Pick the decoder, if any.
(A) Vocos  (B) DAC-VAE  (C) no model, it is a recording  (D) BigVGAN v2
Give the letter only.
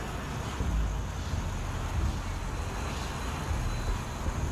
C